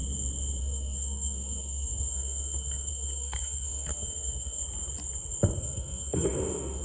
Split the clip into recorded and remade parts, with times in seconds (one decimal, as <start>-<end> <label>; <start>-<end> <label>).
0.0-0.6 recorded; 0.6-4.6 remade; 4.6-5.6 recorded; 5.6-6.8 remade